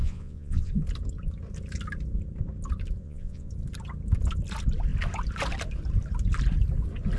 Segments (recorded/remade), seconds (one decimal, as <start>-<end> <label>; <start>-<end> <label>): 0.0-0.7 remade; 0.7-3.0 recorded; 3.0-3.5 remade; 3.5-7.2 recorded